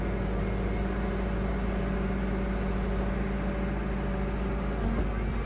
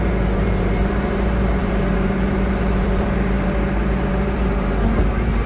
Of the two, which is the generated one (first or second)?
second